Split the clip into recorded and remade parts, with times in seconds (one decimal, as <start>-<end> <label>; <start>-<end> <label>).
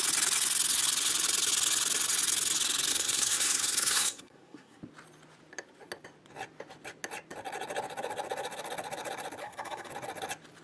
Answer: 0.0-2.9 recorded; 2.9-4.8 remade; 4.8-9.4 recorded; 9.4-9.9 remade; 9.9-10.6 recorded